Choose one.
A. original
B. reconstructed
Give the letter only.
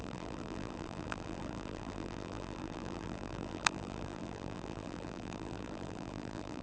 B